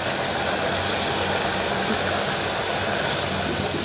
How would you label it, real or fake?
real